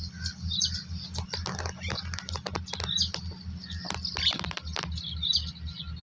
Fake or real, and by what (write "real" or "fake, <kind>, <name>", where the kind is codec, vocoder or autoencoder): real